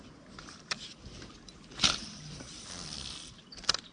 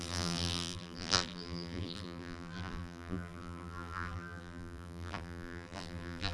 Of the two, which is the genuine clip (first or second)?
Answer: first